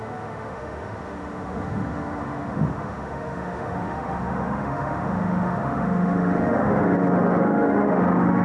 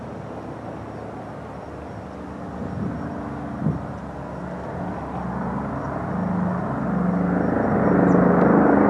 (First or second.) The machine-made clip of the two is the first